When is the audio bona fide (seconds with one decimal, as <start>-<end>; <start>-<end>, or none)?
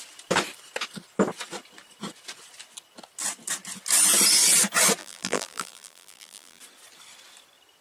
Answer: 0.0-5.0; 6.6-7.8